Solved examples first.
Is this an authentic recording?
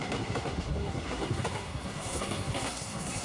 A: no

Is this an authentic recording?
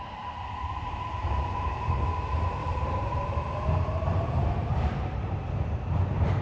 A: no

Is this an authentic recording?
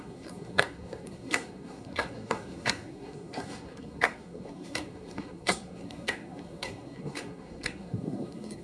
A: no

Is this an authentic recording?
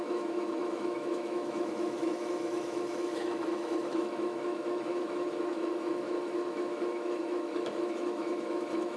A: no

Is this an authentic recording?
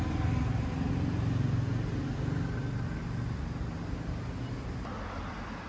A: yes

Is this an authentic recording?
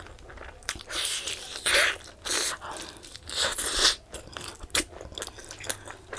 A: yes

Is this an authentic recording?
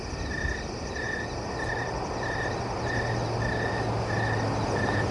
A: yes